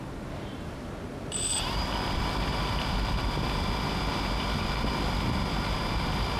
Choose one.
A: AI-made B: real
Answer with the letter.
B